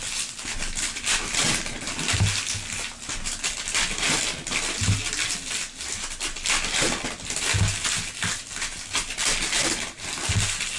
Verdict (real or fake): real